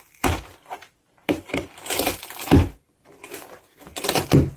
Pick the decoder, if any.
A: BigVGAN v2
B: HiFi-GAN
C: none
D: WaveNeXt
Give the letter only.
C